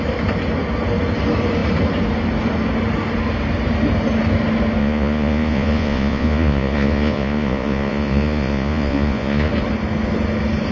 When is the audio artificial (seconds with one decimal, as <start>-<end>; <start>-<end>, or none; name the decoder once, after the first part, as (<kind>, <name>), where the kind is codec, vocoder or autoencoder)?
4.8-9.5 (vocoder, Vocos)